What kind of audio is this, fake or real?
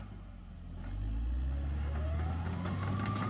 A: real